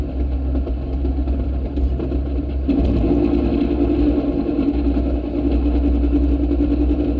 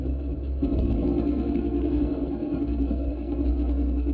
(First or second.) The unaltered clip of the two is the first